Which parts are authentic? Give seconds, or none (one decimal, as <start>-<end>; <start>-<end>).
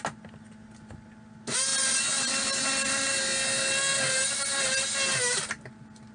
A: 0.0-6.1